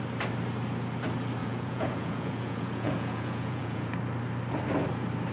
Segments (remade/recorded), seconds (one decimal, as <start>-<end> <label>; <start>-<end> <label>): 0.0-1.4 recorded; 1.4-3.9 remade; 3.9-5.3 recorded